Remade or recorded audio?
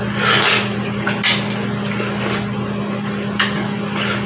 recorded